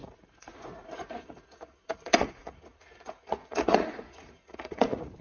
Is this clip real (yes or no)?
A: no